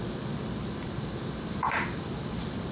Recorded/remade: remade